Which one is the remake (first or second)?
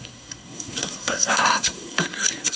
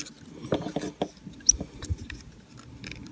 first